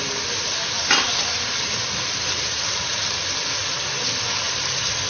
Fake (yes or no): no